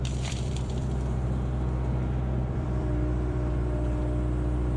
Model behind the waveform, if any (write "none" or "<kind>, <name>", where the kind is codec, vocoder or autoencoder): vocoder, BigVGAN v2